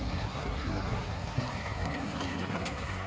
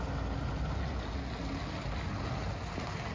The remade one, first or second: first